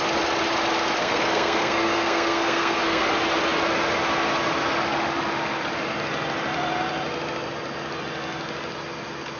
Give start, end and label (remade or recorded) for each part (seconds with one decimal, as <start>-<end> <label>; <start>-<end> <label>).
0.0-1.0 recorded; 1.0-3.1 remade; 3.1-9.4 recorded

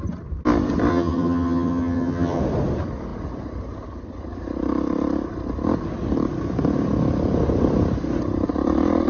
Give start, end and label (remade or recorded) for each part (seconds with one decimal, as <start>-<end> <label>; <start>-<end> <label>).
0.0-0.9 recorded; 0.9-2.4 remade; 2.4-9.1 recorded

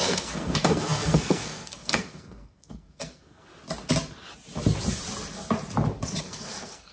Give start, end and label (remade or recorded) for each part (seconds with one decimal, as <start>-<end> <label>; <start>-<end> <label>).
0.0-3.5 remade; 3.5-6.2 recorded; 6.2-6.9 remade